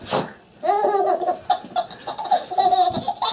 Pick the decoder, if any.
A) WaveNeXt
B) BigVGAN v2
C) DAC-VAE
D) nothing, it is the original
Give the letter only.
D